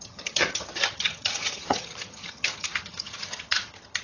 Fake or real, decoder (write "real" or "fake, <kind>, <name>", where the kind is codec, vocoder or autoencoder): fake, vocoder, HiFi-GAN